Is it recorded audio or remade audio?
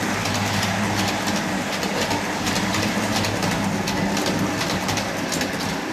recorded